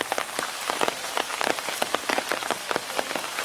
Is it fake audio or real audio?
fake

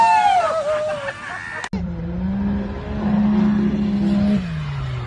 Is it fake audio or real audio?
real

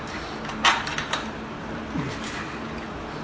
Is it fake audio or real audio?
fake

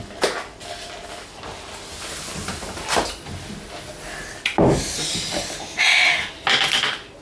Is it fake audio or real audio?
real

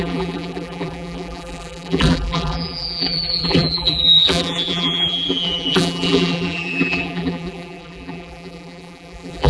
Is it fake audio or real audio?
fake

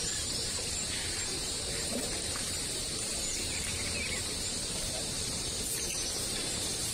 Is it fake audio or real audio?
fake